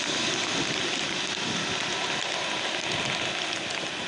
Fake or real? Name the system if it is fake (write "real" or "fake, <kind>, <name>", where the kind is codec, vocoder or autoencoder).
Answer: real